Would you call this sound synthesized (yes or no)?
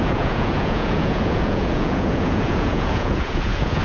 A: yes